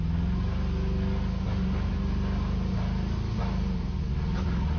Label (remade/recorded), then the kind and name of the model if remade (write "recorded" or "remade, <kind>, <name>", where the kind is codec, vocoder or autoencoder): recorded